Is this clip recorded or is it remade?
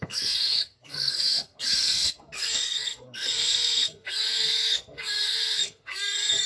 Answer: remade